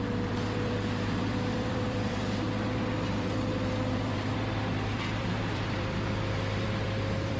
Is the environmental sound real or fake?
fake